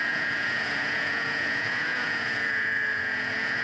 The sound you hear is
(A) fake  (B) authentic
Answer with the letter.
A